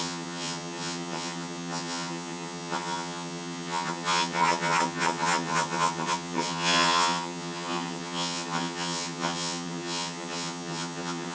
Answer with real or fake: fake